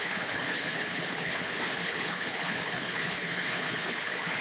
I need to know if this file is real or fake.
fake